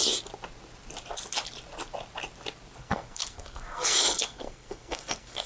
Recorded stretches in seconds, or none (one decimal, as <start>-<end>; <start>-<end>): 0.0-2.8